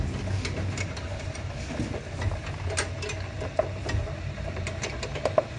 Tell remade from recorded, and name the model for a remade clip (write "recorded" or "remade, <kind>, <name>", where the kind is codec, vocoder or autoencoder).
recorded